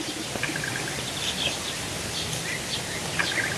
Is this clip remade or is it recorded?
recorded